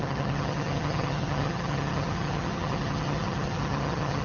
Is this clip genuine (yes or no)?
no